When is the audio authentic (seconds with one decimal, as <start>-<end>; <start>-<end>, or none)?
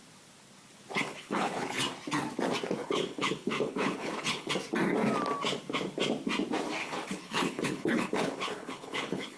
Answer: 0.0-1.1; 1.8-2.8; 4.5-6.8